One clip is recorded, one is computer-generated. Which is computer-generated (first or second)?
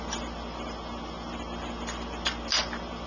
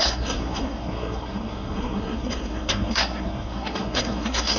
second